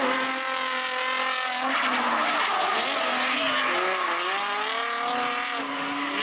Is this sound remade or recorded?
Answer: recorded